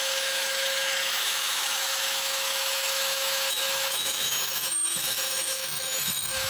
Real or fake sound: fake